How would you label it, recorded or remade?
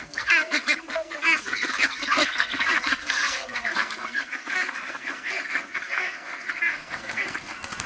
remade